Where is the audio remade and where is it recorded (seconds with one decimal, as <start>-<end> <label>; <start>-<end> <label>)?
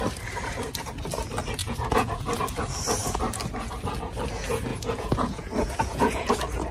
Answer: 0.0-1.6 recorded; 1.6-2.4 remade; 2.4-4.7 recorded; 4.7-6.3 remade; 6.3-6.7 recorded